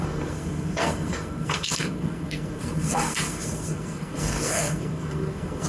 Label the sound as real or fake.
fake